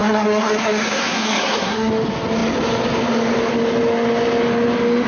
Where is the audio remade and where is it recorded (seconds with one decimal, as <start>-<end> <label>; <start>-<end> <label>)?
0.0-1.9 remade; 1.9-5.1 recorded